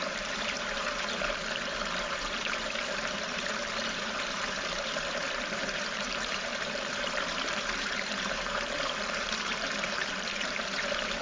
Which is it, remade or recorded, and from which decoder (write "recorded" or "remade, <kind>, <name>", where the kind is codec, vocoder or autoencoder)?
remade, vocoder, BigVGAN v2